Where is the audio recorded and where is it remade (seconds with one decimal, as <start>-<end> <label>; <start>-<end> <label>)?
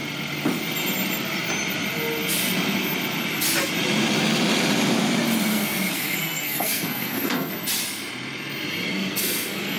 0.0-5.5 recorded; 5.5-7.5 remade; 7.5-8.9 recorded; 8.9-9.8 remade